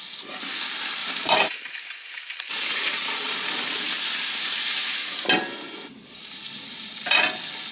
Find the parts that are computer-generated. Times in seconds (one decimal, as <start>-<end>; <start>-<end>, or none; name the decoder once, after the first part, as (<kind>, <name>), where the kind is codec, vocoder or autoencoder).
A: 1.0-3.7 (vocoder, BigVGAN v2)